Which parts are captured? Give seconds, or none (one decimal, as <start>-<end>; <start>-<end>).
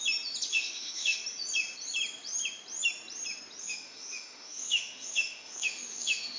0.0-0.5; 1.2-3.6